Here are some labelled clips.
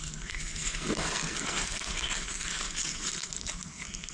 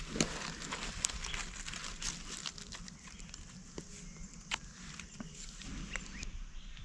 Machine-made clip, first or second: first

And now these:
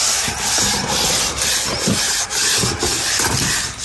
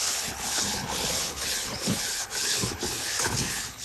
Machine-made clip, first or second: second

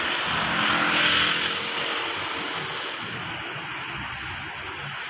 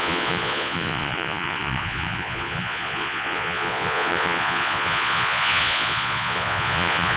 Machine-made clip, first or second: second